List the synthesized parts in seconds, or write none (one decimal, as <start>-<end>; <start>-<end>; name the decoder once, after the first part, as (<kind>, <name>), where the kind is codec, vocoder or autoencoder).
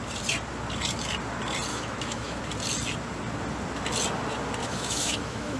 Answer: 1.7-2.4 (autoencoder, DAC-VAE); 4.6-5.6